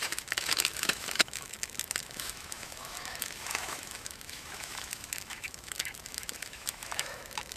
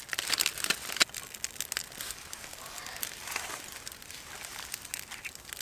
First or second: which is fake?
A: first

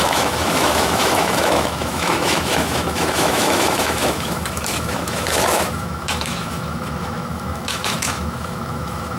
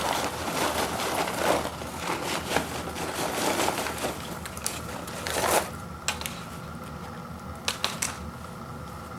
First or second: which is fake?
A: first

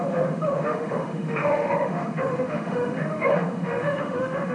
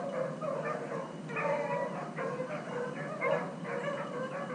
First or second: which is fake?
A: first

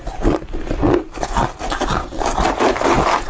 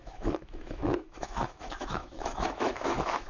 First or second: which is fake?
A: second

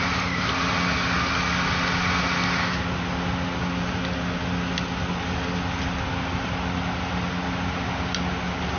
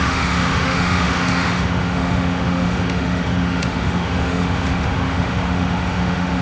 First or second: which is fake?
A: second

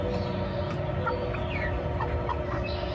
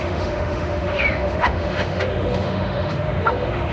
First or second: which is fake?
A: second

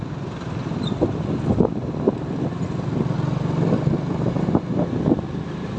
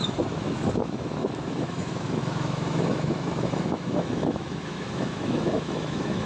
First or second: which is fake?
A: second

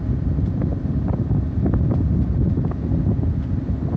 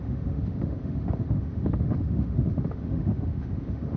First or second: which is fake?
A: second